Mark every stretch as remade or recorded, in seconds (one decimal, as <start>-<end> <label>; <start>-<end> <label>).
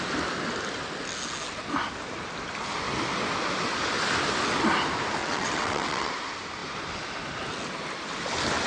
0.0-5.2 recorded; 5.2-6.1 remade; 6.1-8.7 recorded